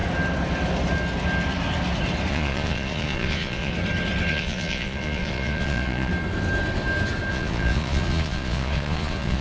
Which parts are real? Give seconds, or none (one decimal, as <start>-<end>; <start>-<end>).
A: 0.0-2.3; 3.7-4.3; 6.1-7.3